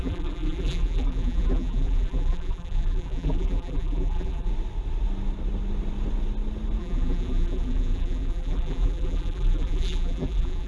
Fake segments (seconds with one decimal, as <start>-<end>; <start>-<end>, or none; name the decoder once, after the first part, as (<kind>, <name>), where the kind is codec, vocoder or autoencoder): 0.0-4.5 (vocoder, BigVGAN v2); 6.8-10.7

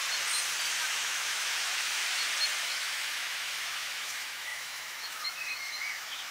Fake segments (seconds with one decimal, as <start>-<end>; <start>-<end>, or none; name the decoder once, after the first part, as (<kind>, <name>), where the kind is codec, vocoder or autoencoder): 0.9-2.0 (autoencoder, DAC-VAE); 2.6-6.3

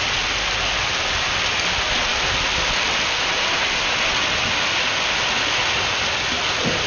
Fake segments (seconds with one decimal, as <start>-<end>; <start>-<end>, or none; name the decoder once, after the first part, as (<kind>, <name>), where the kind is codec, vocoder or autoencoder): none

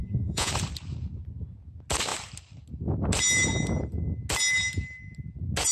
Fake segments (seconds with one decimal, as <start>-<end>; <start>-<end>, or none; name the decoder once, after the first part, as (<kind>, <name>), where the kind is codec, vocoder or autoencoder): 0.0-0.5 (vocoder, Vocos)

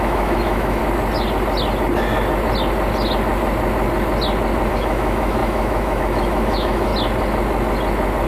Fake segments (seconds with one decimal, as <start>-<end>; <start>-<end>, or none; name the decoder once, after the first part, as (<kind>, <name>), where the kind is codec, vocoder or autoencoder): 0.0-0.8 (autoencoder, DAC-VAE); 4.7-6.9